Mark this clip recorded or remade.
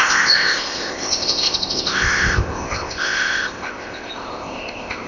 remade